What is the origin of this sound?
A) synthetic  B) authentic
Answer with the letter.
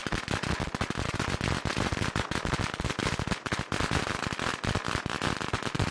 B